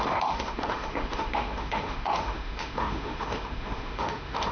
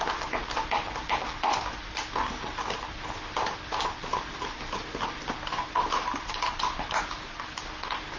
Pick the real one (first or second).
second